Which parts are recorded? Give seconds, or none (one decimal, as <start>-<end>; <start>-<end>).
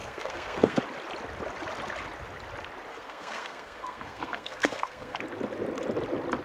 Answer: 0.8-2.9; 5.2-6.4